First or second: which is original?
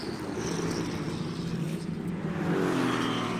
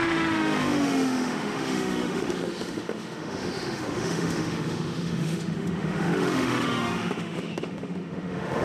first